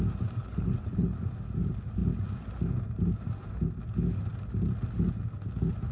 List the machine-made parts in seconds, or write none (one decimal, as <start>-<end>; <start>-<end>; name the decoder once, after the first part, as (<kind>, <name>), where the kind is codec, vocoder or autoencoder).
0.4-1.2 (codec, HILCodec)